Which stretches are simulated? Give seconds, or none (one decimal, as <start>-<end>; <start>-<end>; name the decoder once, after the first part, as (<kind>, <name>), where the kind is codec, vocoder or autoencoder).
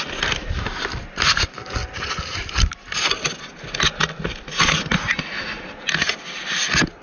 none